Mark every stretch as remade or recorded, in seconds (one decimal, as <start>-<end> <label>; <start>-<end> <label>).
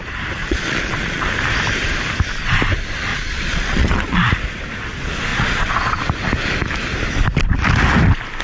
0.0-0.4 recorded; 0.4-1.3 remade; 1.3-3.1 recorded; 3.1-4.3 remade; 4.3-5.3 recorded; 5.3-6.0 remade; 6.0-8.4 recorded